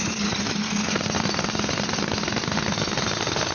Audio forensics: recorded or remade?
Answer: recorded